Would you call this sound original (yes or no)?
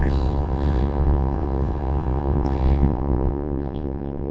no